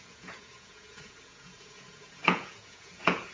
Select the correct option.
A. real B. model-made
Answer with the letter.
B